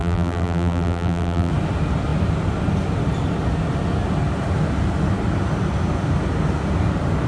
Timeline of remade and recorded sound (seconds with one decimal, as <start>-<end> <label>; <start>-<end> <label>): 0.0-1.5 remade; 1.5-7.3 recorded

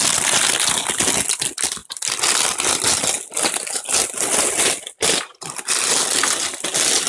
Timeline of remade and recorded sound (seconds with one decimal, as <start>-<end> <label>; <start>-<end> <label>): 0.0-7.1 recorded